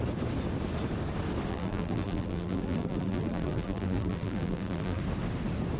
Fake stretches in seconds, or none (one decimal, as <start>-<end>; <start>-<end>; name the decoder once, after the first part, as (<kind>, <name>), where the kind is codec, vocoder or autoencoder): 1.5-5.0 (vocoder, BigVGAN v2)